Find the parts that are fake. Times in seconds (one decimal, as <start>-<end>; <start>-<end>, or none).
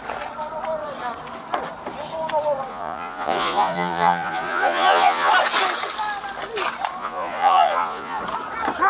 2.7-5.3; 7.0-8.2